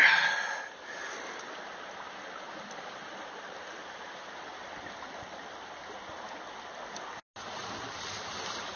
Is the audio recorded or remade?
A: recorded